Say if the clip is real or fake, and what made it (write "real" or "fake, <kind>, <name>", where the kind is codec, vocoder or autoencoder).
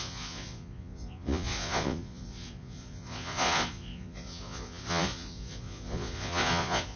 fake, vocoder, Vocos